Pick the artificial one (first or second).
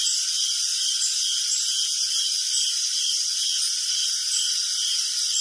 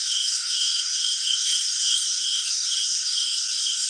second